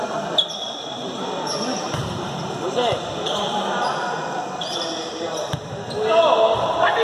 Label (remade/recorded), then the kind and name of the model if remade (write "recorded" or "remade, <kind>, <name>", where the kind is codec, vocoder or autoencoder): remade, vocoder, BigVGAN v2